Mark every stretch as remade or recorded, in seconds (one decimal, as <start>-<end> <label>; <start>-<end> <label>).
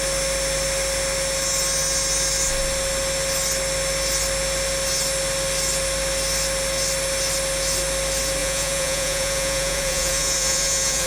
0.0-8.4 recorded; 8.4-11.1 remade